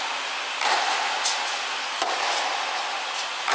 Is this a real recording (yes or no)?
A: yes